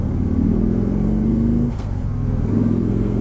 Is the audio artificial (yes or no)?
yes